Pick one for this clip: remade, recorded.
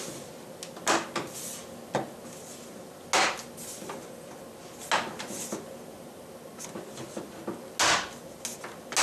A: recorded